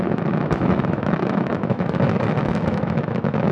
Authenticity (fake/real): fake